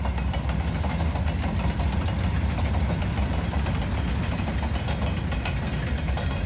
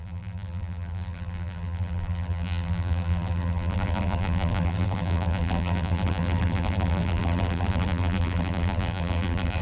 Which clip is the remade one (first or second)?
second